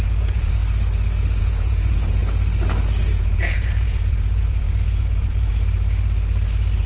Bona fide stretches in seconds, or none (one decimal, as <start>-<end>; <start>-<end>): 0.6-1.4; 2.2-3.0; 5.5-6.9